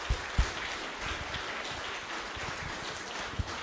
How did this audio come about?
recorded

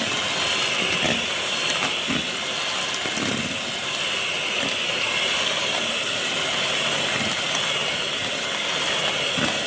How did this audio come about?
recorded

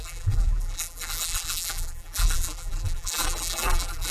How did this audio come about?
remade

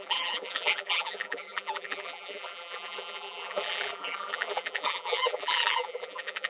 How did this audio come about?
remade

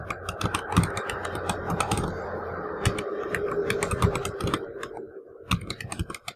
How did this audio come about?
recorded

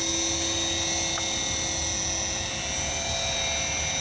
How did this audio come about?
recorded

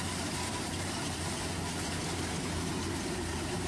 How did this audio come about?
remade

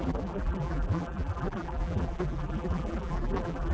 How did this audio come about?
remade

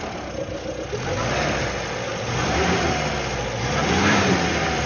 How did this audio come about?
recorded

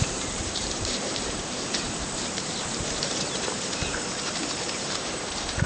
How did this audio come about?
remade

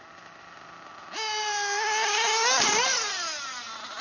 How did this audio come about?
recorded